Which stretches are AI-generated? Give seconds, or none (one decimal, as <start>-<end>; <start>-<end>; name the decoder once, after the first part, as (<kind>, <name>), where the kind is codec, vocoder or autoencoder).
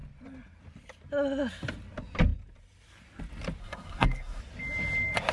3.6-4.4 (codec, SNAC)